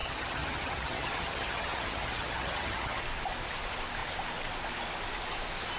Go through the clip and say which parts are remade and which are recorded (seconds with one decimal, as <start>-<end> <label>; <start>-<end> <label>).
0.0-3.0 remade; 3.0-5.8 recorded